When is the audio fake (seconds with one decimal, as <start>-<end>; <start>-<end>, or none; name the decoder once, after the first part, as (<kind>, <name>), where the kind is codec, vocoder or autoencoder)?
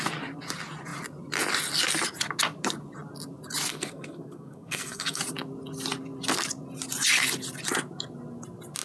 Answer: 3.7-5.2 (codec, SNAC)